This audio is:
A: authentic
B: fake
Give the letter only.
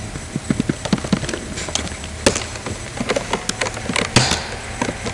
A